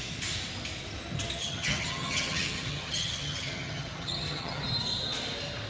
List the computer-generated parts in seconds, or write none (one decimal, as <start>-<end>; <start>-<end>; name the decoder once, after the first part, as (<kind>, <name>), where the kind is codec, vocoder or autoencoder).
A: 1.4-4.6 (vocoder, HiFi-GAN)